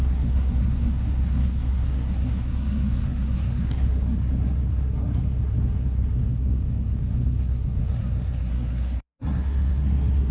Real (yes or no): no